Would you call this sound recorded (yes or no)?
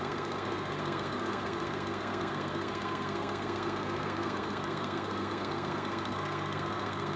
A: no